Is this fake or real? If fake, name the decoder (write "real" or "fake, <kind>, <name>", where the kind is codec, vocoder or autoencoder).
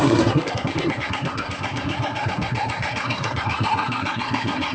fake, codec, SNAC